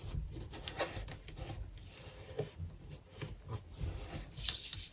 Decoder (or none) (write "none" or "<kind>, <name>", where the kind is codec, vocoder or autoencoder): vocoder, BigVGAN v2